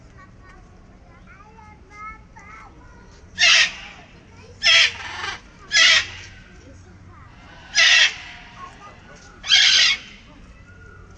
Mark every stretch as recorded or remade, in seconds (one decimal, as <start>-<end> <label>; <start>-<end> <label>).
0.0-5.5 recorded; 5.5-6.7 remade; 6.7-11.2 recorded